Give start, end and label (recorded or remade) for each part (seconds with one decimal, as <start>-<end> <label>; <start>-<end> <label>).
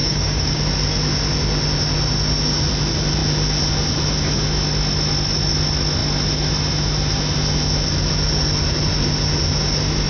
0.0-0.6 remade; 0.6-10.1 recorded